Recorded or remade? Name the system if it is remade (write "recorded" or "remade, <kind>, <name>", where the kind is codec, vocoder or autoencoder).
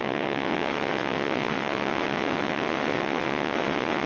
remade, vocoder, WaveNeXt